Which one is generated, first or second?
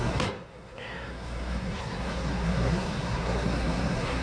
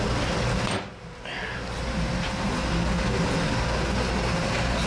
first